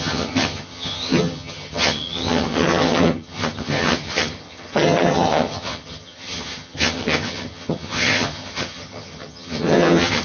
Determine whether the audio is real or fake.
fake